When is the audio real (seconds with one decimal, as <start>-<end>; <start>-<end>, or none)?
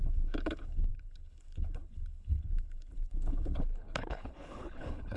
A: none